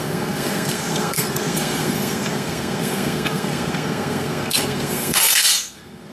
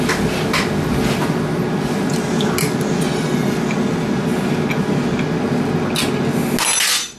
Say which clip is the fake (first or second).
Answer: first